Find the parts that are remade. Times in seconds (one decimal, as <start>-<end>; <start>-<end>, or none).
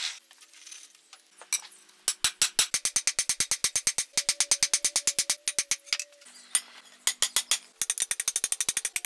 none